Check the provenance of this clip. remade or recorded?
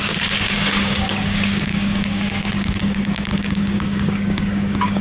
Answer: remade